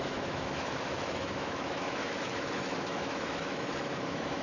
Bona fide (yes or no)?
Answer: no